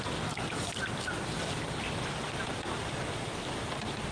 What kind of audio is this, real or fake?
real